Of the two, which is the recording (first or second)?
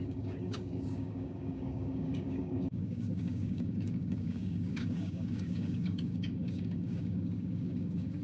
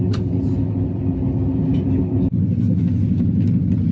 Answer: second